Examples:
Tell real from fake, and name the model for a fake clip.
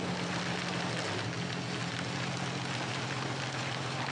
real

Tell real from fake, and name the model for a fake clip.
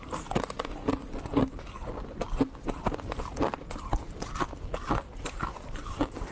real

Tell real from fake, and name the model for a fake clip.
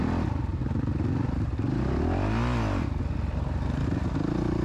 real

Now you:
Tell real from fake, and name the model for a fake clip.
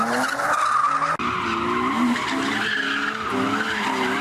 real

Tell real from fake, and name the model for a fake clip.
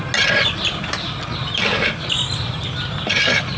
real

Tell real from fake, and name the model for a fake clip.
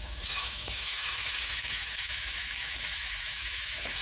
fake, autoencoder, DAC-VAE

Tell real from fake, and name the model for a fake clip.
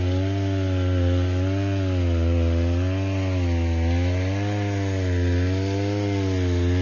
real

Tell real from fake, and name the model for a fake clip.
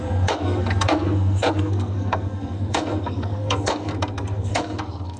fake, codec, SNAC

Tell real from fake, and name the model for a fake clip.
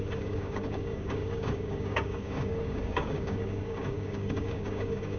fake, codec, DAC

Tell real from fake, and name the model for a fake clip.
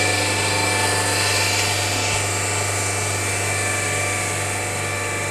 real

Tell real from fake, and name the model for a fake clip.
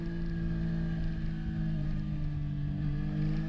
real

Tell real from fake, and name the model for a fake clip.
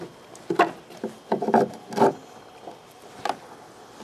real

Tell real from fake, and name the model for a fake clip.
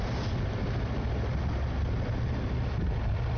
real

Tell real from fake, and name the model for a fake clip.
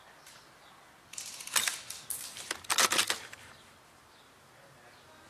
real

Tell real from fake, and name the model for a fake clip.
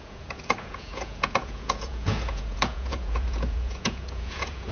fake, vocoder, Vocos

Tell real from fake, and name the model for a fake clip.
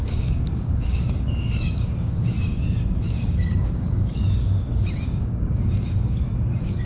fake, codec, DAC